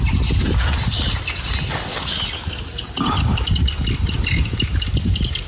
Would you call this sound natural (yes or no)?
yes